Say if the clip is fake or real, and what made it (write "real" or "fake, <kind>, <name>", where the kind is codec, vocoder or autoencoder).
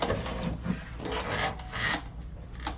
real